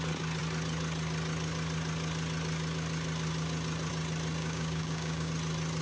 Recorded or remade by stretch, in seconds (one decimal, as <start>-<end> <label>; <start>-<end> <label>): 0.0-4.4 recorded; 4.4-5.3 remade; 5.3-5.8 recorded